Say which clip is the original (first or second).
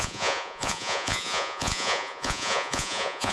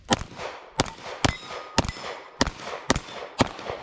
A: second